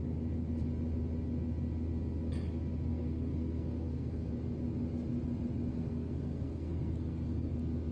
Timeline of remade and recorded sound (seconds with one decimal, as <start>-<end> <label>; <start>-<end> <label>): 0.0-2.9 recorded; 2.9-4.3 remade; 4.3-5.7 recorded; 5.7-7.5 remade; 7.5-7.9 recorded